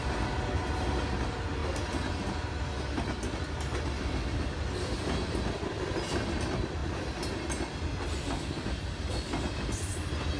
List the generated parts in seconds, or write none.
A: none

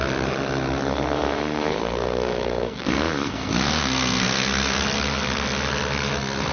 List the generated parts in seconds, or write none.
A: 0.9-4.8 (codec, SNAC)

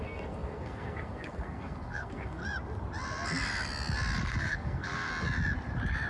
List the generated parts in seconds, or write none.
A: 0.0-2.4 (codec, SNAC); 4.2-5.1

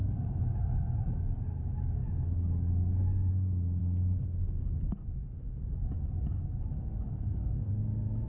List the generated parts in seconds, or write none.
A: 7.1-7.7 (codec, SNAC)

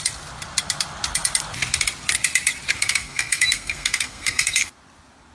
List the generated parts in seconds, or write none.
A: 2.8-4.7 (codec, SNAC)

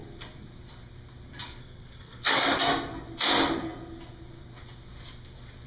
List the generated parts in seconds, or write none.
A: 1.6-2.5 (codec, SNAC)